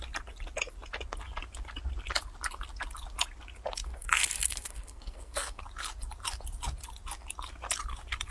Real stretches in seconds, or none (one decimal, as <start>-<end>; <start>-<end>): 0.0-3.8; 5.6-8.3